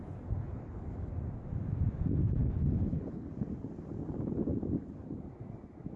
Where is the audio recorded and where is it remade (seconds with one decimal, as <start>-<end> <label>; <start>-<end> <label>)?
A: 0.0-0.4 recorded; 0.4-1.1 remade; 1.1-2.4 recorded; 2.4-3.3 remade; 3.3-6.0 recorded